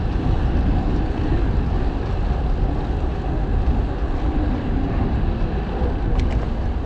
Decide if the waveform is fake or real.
real